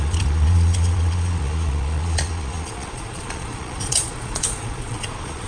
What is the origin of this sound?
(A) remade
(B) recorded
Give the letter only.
A